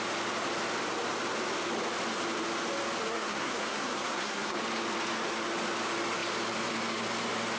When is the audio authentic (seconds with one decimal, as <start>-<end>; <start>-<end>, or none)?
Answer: 0.0-3.1; 4.6-7.6